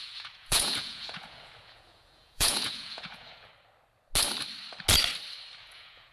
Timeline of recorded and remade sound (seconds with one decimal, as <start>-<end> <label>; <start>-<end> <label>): 0.0-3.5 remade; 3.5-5.6 recorded; 5.6-6.1 remade